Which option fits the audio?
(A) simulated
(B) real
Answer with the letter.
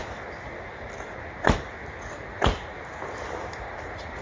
B